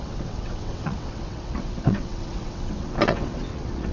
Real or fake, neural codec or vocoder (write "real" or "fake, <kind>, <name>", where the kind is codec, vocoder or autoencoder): fake, vocoder, WaveNeXt